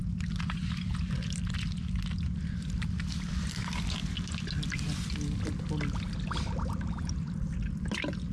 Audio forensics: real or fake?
real